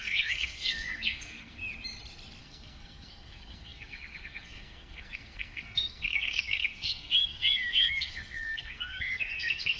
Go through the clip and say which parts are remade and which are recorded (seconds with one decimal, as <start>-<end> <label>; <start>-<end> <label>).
0.0-1.6 remade; 1.6-2.4 recorded; 2.4-9.8 remade